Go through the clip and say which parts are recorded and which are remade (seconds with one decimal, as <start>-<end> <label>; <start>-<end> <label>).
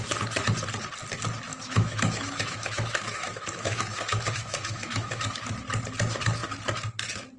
0.0-1.5 recorded; 1.5-5.3 remade; 5.3-7.4 recorded